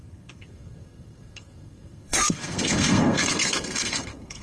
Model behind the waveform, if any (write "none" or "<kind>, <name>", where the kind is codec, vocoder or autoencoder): codec, SNAC